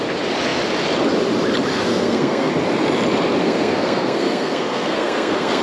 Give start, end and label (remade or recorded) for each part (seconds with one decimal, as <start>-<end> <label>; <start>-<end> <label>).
0.0-1.7 recorded; 1.7-2.5 remade; 2.5-3.4 recorded; 3.4-5.6 remade

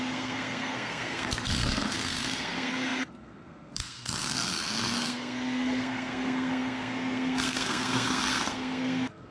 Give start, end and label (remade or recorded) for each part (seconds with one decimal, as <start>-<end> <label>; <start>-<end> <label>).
0.0-9.3 remade